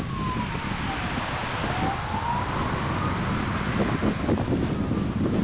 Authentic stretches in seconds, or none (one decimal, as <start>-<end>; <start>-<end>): 0.0-5.4

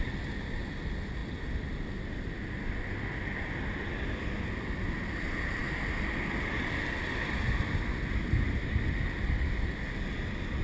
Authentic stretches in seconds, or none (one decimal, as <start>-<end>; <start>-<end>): 0.0-10.6

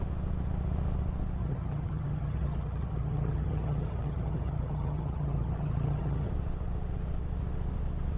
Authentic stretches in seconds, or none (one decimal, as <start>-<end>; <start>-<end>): 0.0-1.4; 6.3-8.2

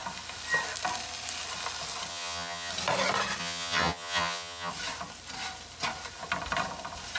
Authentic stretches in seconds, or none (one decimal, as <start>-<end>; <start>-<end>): 0.0-2.1; 2.7-3.4; 4.7-7.2

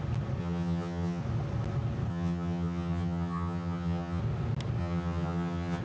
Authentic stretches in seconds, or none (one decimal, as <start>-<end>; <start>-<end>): 0.0-0.4; 1.2-2.1; 4.2-4.8

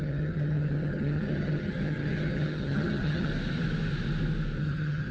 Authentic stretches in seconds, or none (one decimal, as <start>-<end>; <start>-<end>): 3.3-4.6

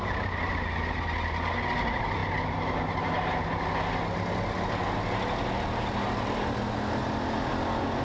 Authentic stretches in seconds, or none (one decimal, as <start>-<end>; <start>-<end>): 0.0-8.0

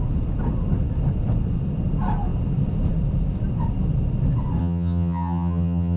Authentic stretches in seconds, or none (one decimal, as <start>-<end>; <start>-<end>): 0.0-4.6